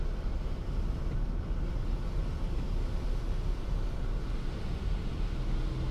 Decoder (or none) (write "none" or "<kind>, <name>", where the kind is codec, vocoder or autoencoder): none